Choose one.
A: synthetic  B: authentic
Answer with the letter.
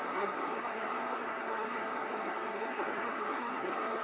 A